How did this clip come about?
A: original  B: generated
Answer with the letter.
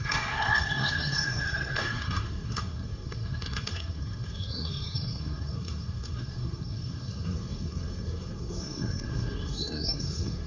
B